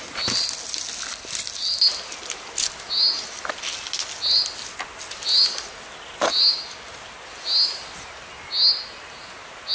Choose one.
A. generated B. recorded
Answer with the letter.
B